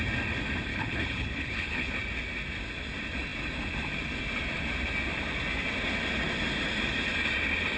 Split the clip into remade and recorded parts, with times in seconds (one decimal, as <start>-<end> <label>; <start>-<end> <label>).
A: 0.0-0.7 recorded; 0.7-1.9 remade; 1.9-7.8 recorded